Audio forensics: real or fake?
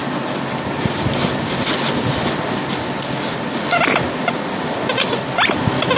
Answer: real